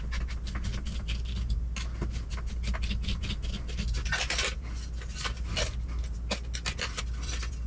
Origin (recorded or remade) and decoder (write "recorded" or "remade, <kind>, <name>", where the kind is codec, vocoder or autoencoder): recorded